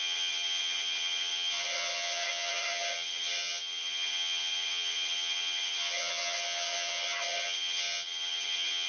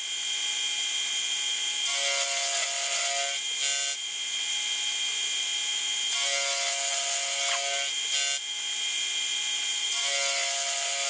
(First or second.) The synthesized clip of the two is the first